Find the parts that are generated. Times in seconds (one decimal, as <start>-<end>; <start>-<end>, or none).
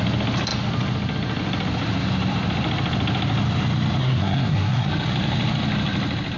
4.0-4.9